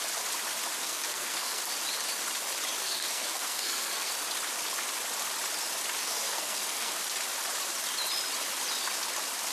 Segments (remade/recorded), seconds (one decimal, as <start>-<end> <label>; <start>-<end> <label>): 0.0-0.8 recorded; 0.8-1.6 remade; 1.6-2.8 recorded; 2.8-4.1 remade; 4.1-6.0 recorded; 6.0-7.0 remade; 7.0-9.5 recorded